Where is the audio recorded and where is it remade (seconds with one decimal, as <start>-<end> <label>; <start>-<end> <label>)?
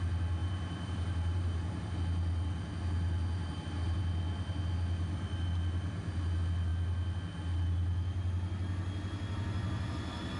0.0-0.4 recorded; 0.4-1.8 remade; 1.8-3.4 recorded; 3.4-4.0 remade; 4.0-10.4 recorded